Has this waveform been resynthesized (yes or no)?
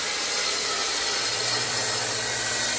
yes